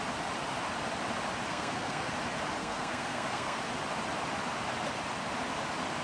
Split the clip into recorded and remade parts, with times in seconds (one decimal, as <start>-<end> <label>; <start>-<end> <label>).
0.0-1.5 recorded; 1.5-2.1 remade; 2.1-2.6 recorded; 2.6-3.6 remade; 3.6-6.0 recorded